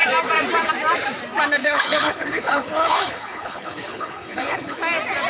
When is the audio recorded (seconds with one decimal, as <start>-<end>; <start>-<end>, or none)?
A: 0.0-1.6; 4.8-5.3

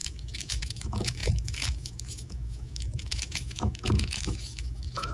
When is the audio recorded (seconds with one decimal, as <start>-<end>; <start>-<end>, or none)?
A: none

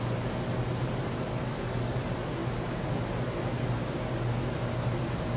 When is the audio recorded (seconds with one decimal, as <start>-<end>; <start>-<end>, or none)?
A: 0.0-5.4

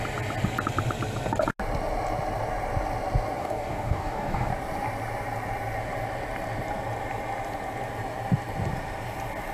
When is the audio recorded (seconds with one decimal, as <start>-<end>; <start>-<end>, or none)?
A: 0.0-3.4; 4.5-9.5